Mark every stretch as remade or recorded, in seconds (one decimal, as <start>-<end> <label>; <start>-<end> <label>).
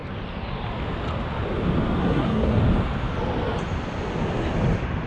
0.0-2.0 recorded; 2.0-2.6 remade; 2.6-5.1 recorded